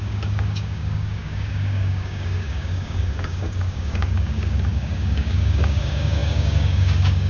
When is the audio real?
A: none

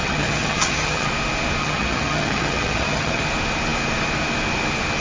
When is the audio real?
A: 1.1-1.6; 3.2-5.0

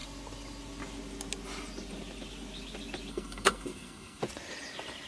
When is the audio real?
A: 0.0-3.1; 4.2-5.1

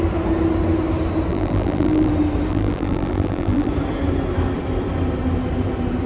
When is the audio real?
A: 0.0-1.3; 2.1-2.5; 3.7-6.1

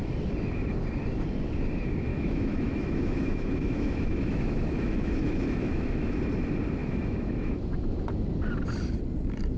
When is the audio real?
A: 0.0-2.1; 6.2-6.8; 7.6-9.6